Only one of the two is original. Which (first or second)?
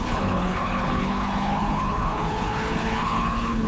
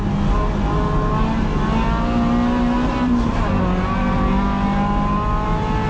second